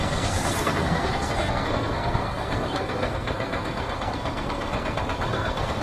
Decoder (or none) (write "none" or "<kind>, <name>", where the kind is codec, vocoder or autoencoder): codec, SNAC